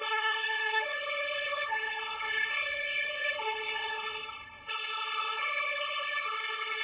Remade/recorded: remade